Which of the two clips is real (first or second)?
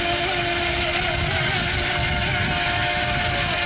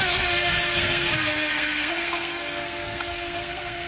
first